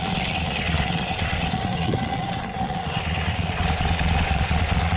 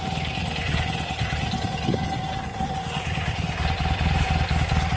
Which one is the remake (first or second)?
first